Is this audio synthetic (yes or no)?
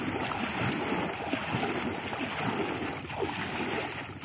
no